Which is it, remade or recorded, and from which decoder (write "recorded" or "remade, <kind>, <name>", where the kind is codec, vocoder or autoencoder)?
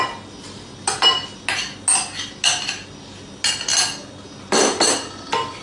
recorded